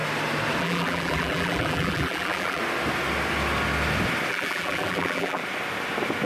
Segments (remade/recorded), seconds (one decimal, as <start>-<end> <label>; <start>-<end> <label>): 0.0-0.6 recorded; 0.6-2.6 remade; 2.6-4.3 recorded; 4.3-5.4 remade; 5.4-6.3 recorded